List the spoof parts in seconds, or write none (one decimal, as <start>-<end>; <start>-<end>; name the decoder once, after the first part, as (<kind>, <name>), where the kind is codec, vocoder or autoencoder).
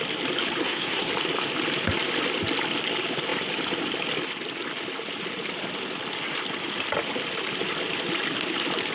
0.6-1.1 (codec, SNAC)